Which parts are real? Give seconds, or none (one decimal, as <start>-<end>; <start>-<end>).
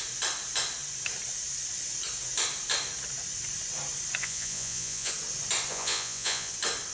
0.0-4.2; 5.1-5.7; 6.5-6.9